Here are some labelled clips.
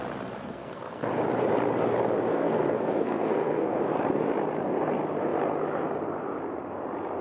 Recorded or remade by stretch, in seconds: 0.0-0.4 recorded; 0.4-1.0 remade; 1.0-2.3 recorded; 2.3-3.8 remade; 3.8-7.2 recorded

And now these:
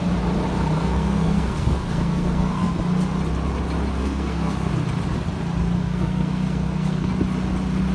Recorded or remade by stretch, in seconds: 0.0-0.8 recorded; 0.8-2.7 remade; 2.7-4.0 recorded; 4.0-4.7 remade; 4.7-5.8 recorded; 5.8-7.1 remade; 7.1-7.9 recorded

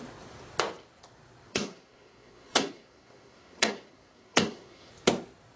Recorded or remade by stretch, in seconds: 0.0-1.5 recorded; 1.5-4.9 remade; 4.9-5.6 recorded

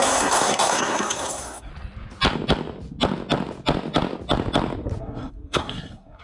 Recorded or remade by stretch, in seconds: 0.0-1.7 remade; 1.7-5.0 recorded; 5.0-6.2 remade

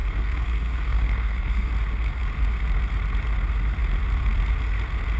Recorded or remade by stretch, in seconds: 0.0-1.7 remade; 1.7-5.2 recorded

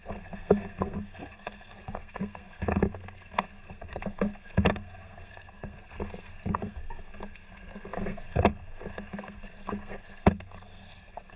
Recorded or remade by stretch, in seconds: 0.0-11.4 remade

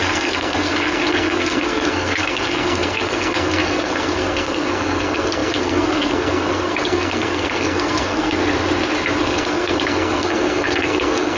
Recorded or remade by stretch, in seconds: 0.0-8.4 remade; 8.4-9.2 recorded; 9.2-11.4 remade

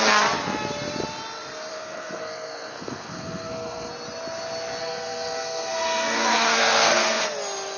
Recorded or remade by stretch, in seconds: 0.0-1.7 recorded; 1.7-3.9 remade; 3.9-4.8 recorded; 4.8-7.2 remade; 7.2-7.8 recorded